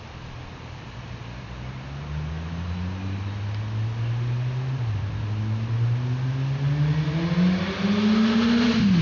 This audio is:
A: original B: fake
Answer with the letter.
A